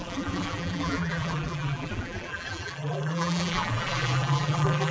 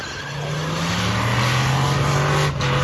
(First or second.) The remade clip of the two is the first